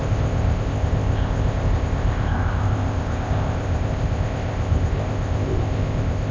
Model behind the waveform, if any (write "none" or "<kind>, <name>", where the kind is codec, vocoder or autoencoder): codec, ZipCodec